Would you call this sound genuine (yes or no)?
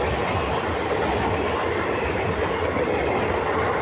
yes